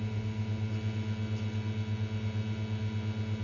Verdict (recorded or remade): recorded